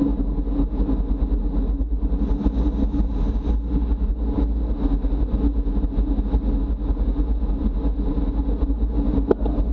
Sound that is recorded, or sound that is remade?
recorded